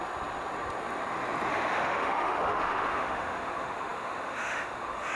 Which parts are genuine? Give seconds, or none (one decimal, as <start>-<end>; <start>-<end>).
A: 0.0-1.5